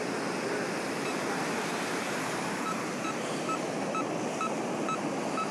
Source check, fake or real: real